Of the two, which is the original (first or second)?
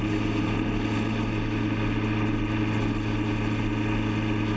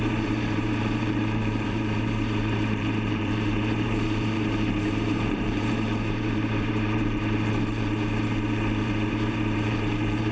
first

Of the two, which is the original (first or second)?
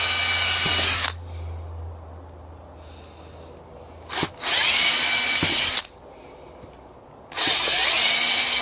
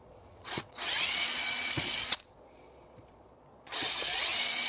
first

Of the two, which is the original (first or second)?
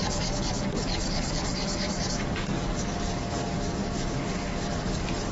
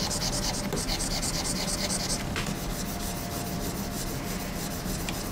second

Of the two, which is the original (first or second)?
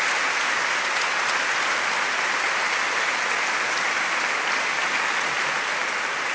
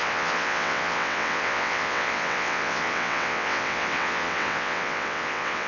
first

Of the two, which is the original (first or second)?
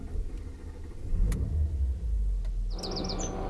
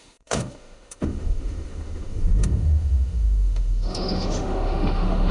first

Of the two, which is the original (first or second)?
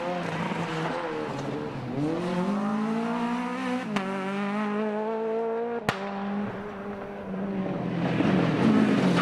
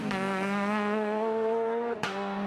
first